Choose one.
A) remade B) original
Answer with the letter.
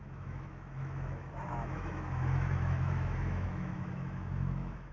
A